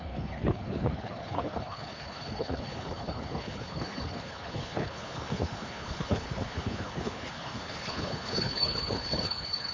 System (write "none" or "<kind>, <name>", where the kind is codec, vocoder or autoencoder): codec, HILCodec